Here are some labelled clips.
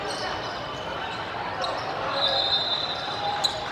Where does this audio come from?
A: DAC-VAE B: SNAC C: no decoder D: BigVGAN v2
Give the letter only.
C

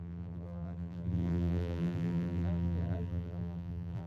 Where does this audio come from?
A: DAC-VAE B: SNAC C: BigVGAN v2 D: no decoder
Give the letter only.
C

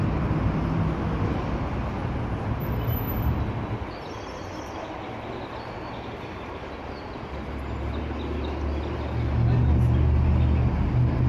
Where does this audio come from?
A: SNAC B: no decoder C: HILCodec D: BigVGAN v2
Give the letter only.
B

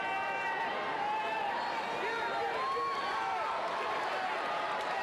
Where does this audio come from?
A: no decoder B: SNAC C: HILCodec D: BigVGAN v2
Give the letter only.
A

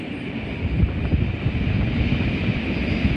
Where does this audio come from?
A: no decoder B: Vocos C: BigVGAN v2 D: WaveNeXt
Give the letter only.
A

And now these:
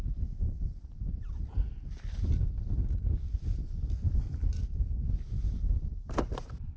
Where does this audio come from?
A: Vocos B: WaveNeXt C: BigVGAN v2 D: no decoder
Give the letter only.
D